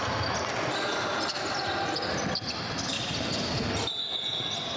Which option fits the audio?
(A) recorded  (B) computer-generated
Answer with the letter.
A